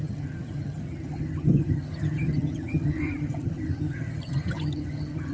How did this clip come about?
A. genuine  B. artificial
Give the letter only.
B